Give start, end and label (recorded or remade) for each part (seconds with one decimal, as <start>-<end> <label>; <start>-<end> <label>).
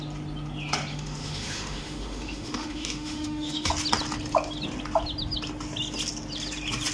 0.0-0.9 recorded; 0.9-3.7 remade; 3.7-6.9 recorded